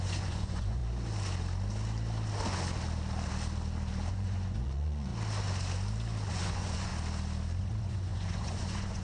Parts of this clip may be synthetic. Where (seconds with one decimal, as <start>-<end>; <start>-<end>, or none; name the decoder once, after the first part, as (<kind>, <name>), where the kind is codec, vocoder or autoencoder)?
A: 0.0-0.8 (vocoder, Vocos); 4.1-5.1; 6.3-6.9; 7.6-9.0